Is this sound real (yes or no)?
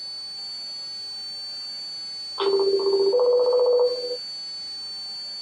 yes